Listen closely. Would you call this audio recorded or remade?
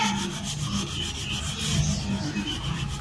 recorded